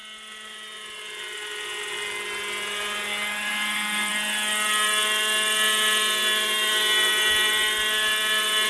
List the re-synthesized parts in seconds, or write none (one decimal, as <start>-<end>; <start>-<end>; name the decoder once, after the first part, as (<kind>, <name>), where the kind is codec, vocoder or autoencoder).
none